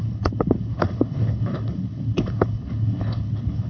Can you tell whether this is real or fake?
fake